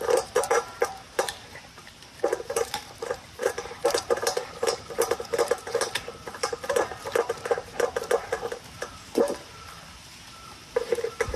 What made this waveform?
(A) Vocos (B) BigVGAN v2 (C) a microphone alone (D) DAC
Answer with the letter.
B